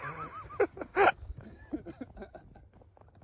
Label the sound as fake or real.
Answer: real